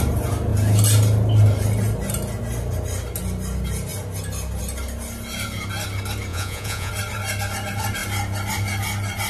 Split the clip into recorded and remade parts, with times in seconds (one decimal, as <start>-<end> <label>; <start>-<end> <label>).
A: 0.0-6.3 recorded; 6.3-6.9 remade; 6.9-9.3 recorded